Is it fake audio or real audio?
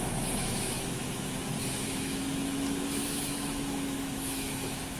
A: fake